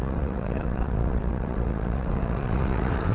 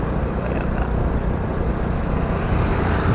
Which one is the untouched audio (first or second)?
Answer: second